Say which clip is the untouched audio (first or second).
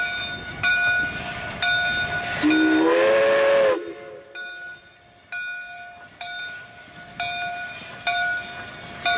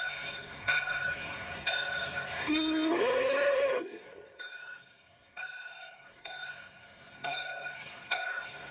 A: first